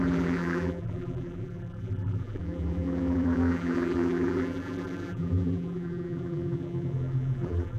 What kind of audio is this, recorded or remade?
remade